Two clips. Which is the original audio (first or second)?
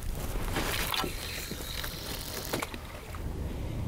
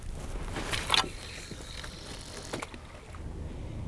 second